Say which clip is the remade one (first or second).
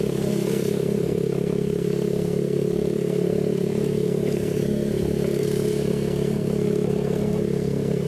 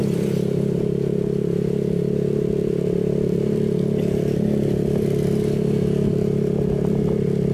first